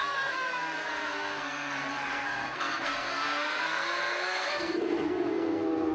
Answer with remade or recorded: remade